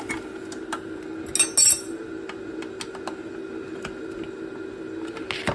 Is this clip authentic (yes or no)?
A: yes